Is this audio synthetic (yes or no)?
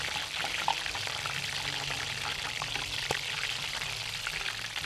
no